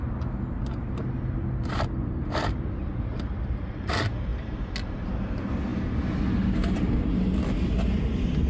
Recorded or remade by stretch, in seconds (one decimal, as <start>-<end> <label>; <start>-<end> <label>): 0.0-8.5 recorded